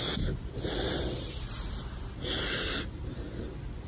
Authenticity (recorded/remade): recorded